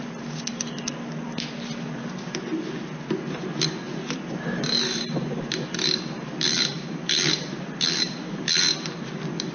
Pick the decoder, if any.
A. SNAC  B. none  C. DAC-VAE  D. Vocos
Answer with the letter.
B